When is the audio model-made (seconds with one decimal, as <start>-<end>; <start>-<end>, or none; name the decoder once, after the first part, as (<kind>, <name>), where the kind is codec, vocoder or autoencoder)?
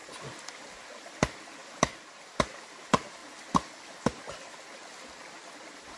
none